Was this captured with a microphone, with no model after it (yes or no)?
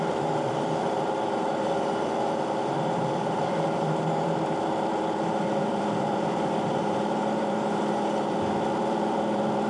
no